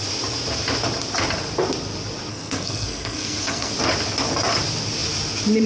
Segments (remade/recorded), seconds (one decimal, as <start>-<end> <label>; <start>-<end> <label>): 0.0-2.3 recorded; 2.3-3.7 remade; 3.7-5.7 recorded